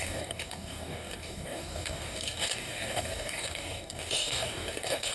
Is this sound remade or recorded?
remade